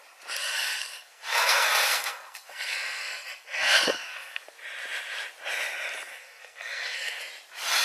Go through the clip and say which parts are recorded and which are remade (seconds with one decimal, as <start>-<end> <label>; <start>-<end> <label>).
0.0-0.4 recorded; 0.4-4.4 remade; 4.4-6.1 recorded; 6.1-7.2 remade; 7.2-7.8 recorded